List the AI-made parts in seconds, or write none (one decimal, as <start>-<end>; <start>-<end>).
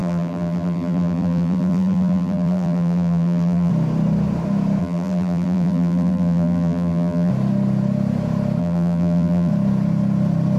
0.0-3.7; 4.8-7.3; 8.6-9.5